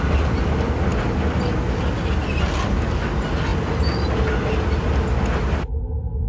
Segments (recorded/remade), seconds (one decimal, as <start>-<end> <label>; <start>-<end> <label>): 0.0-6.3 recorded